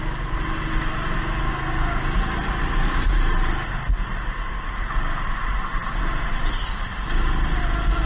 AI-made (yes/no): no